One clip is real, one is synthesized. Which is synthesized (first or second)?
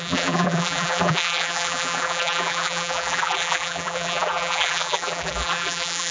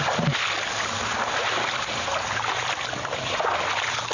first